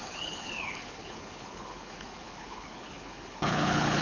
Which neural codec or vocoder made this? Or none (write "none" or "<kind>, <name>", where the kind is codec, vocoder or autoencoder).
codec, HILCodec